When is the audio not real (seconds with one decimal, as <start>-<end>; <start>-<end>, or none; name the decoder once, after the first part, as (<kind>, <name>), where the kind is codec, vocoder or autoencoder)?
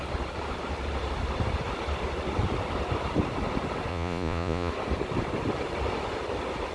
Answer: 3.9-4.7 (vocoder, Vocos)